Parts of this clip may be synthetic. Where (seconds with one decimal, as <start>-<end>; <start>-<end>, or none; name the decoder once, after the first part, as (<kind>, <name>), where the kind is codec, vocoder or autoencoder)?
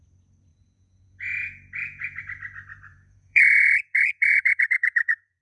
0.5-2.2 (vocoder, Vocos); 2.9-5.4